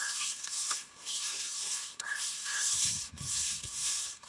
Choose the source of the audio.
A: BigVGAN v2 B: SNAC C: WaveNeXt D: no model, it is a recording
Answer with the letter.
B